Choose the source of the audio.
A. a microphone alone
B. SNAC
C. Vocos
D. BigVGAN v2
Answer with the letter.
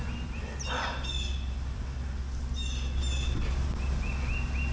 A